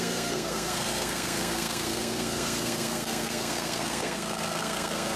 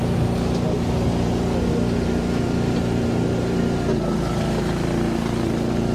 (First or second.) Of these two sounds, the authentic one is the second